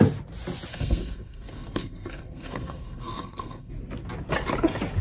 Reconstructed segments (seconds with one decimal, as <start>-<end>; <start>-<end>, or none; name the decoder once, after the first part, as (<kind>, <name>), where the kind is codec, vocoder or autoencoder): 0.7-3.7 (codec, SNAC)